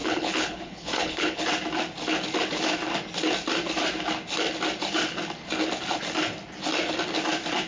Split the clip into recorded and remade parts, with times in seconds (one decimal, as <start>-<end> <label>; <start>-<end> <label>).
0.0-1.4 remade; 1.4-7.7 recorded